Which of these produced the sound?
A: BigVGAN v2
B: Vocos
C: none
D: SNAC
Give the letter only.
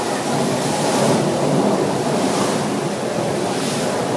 C